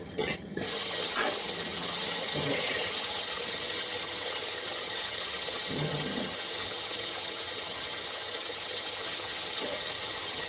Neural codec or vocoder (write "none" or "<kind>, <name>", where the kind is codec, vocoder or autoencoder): vocoder, HiFi-GAN